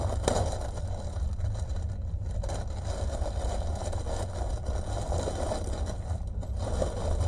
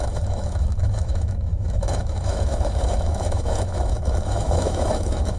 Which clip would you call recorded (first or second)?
first